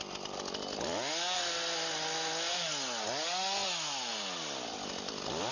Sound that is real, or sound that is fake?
real